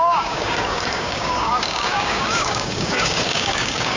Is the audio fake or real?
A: fake